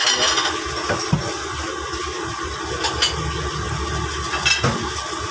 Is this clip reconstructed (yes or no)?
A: no